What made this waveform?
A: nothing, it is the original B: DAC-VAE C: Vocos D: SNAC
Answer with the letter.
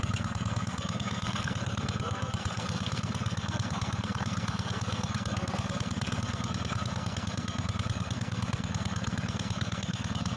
D